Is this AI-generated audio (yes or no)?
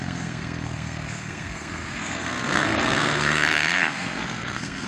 yes